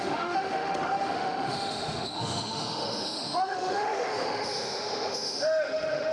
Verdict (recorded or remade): remade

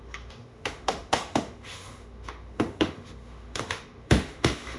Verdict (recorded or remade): remade